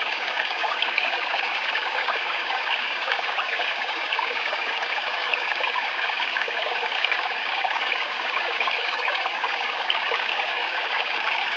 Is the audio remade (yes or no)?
yes